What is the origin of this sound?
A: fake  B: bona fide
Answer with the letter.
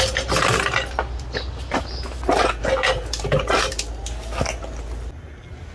B